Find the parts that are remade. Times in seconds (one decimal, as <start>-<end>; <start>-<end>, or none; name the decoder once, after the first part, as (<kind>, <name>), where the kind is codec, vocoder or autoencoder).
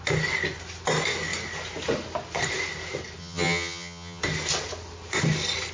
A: 3.2-4.2 (vocoder, HiFi-GAN)